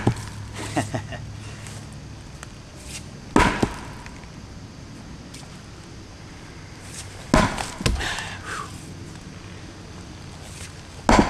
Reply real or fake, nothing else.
real